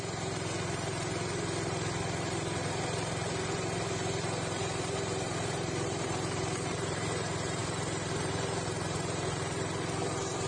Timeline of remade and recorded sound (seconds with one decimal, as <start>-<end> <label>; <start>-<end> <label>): 0.0-10.5 remade